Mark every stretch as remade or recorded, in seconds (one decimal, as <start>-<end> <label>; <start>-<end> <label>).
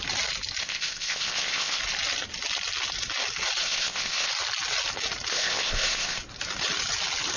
0.0-0.6 recorded; 0.6-1.8 remade; 1.8-3.6 recorded; 3.6-4.3 remade; 4.3-5.3 recorded; 5.3-6.2 remade; 6.2-7.4 recorded